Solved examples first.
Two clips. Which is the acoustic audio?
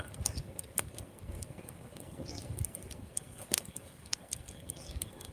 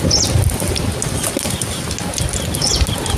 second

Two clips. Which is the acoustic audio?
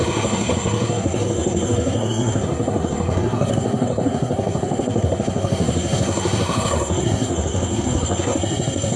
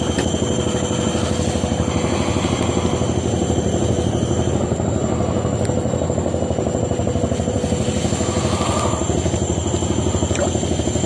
second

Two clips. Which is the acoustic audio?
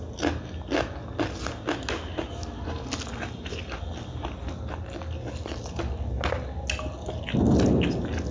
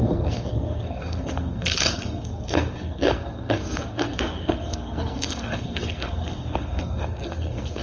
first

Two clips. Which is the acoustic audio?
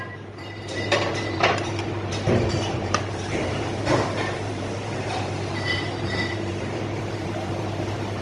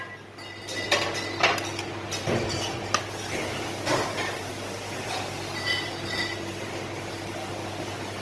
second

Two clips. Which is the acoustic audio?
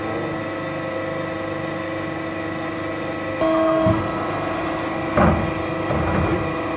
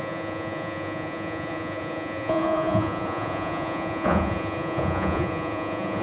first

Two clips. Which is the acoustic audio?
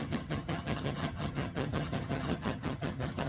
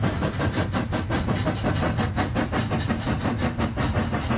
second